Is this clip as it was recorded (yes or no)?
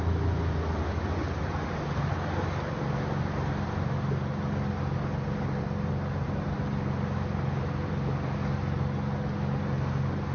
yes